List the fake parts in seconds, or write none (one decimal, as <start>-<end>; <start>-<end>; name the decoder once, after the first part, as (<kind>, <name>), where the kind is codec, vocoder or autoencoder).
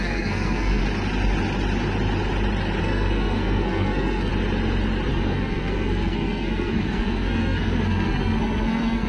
0.0-0.8 (codec, SNAC); 2.8-4.3; 5.1-9.1